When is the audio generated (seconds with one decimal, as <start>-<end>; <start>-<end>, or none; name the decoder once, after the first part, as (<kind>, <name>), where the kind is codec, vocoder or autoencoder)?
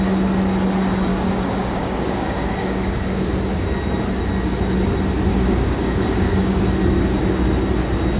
1.1-3.3 (codec, DAC); 5.3-6.6